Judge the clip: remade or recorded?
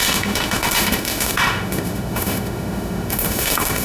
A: remade